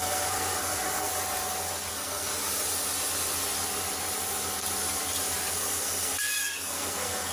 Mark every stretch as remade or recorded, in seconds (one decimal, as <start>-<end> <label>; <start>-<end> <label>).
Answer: 0.0-1.1 remade; 1.1-1.9 recorded; 1.9-2.3 remade; 2.3-5.5 recorded; 5.5-7.3 remade